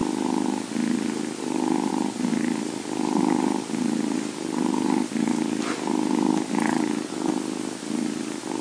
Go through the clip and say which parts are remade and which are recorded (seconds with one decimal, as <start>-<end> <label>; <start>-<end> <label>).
0.0-8.6 recorded